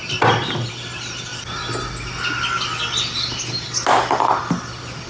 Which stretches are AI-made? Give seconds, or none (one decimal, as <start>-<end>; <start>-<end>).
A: none